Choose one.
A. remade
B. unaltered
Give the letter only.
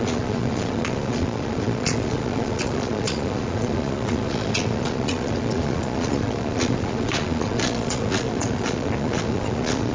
A